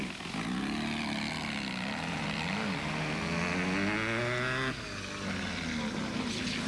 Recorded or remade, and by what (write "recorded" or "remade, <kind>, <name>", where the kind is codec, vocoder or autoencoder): recorded